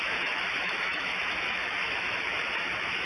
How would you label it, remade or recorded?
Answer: remade